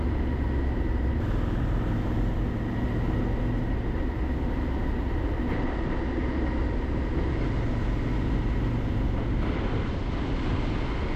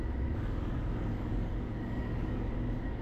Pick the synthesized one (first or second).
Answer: second